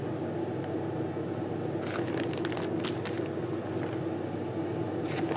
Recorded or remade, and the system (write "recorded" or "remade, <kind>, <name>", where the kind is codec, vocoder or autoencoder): recorded